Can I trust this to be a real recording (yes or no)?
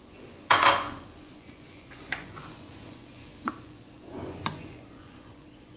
no